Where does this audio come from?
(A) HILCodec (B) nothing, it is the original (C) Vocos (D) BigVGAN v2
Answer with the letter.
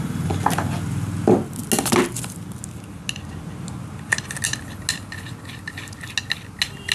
B